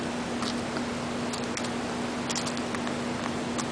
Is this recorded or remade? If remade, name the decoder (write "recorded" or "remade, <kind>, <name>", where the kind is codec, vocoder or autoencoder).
recorded